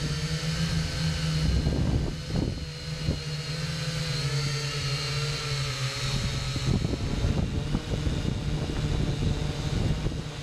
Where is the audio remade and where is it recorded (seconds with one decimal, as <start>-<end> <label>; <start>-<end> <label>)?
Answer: 0.0-10.4 recorded